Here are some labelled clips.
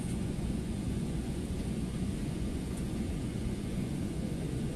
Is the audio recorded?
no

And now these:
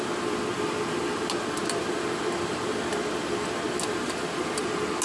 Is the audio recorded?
yes